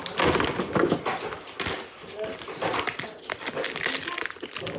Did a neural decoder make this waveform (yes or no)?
no